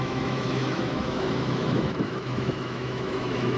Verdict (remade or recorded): remade